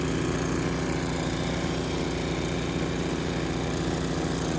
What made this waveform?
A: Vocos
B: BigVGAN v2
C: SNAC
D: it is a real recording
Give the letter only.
D